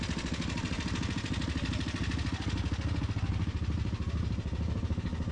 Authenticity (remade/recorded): recorded